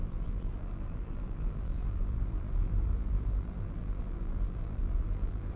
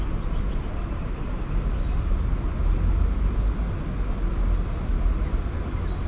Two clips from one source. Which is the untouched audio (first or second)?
second